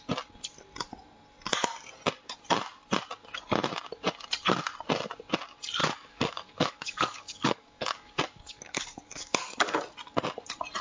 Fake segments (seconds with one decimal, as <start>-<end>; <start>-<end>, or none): 5.8-9.8